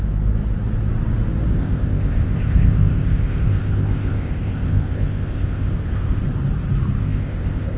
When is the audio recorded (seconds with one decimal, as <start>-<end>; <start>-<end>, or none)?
0.0-1.5; 6.2-7.0